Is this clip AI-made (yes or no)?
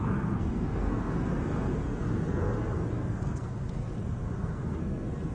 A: yes